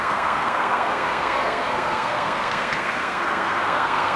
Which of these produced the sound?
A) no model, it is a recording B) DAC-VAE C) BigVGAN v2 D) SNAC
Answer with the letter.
D